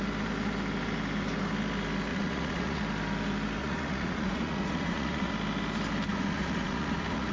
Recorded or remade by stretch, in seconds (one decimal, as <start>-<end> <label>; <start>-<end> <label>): 0.0-2.1 recorded; 2.1-2.8 remade; 2.8-3.6 recorded; 3.6-5.3 remade; 5.3-6.1 recorded; 6.1-7.3 remade